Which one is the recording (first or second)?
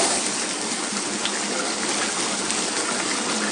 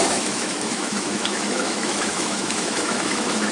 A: first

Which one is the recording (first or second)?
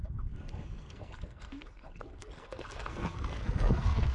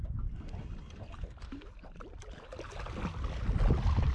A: second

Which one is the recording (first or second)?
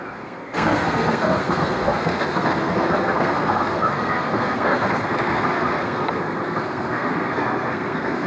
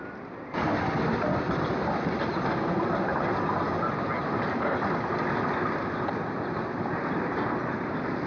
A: second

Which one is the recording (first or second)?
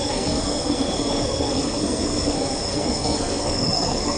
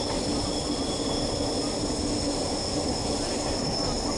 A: second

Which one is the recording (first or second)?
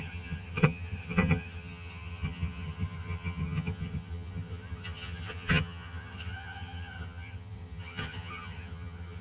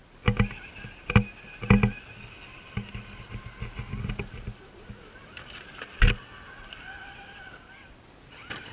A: second